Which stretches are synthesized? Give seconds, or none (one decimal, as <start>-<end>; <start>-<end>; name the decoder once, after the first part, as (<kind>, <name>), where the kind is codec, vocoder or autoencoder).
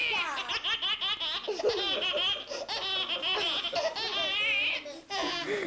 none